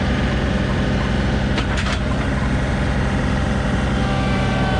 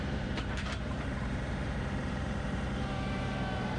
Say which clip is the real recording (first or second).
first